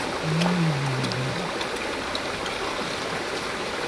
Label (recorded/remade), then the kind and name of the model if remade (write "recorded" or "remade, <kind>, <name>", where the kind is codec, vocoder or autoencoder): recorded